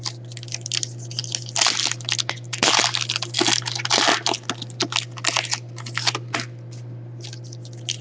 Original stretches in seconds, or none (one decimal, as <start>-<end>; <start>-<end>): 0.0-8.0